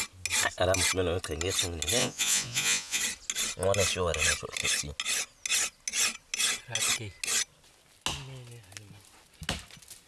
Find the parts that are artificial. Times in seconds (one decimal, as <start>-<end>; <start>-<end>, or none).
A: 2.0-3.0